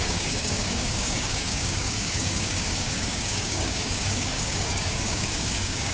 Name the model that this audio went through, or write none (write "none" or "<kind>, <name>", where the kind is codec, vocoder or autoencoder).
codec, DAC